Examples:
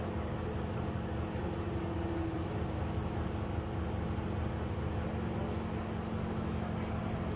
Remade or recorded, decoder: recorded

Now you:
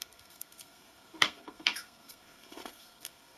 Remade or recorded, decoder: remade, codec, SNAC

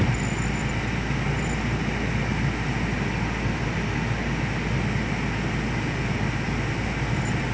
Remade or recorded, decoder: recorded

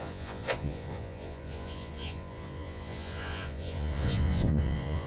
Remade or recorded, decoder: remade, vocoder, Vocos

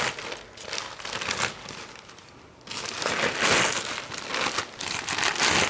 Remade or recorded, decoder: recorded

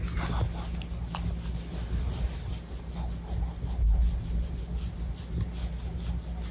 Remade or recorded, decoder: recorded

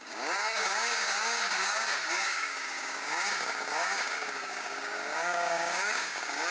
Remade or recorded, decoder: remade, codec, DAC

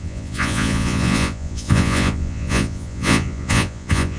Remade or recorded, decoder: remade, vocoder, Vocos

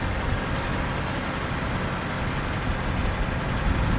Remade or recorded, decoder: recorded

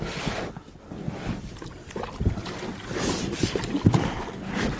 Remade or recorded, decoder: recorded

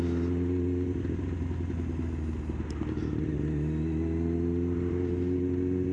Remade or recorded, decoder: recorded